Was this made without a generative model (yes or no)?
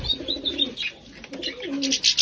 yes